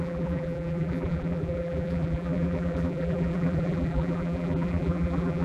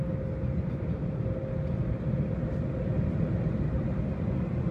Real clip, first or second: second